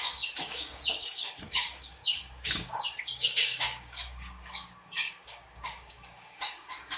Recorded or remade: remade